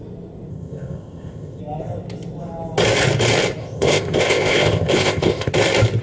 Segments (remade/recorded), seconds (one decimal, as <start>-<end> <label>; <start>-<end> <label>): 0.0-0.5 recorded; 0.5-1.6 remade; 1.6-3.6 recorded; 3.6-5.5 remade; 5.5-6.0 recorded